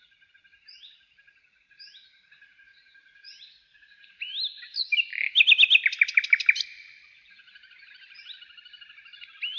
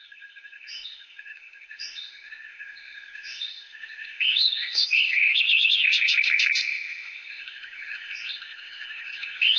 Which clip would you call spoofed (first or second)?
second